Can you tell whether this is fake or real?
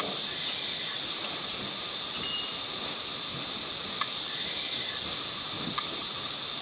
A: real